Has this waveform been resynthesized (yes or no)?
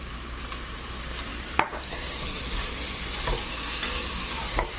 yes